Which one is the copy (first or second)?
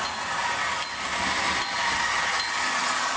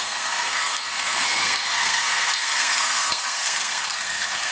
second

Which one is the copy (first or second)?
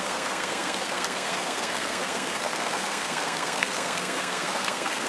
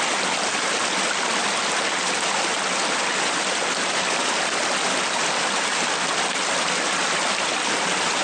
first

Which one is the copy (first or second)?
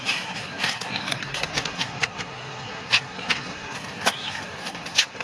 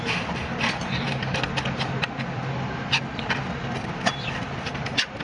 first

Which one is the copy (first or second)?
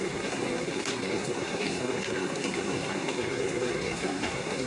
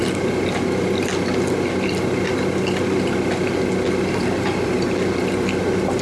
first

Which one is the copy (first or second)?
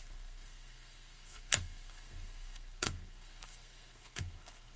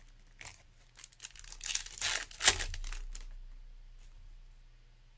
first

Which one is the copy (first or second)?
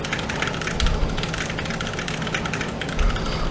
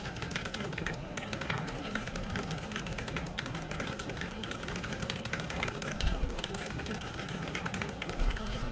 second